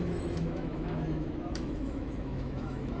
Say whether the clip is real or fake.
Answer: fake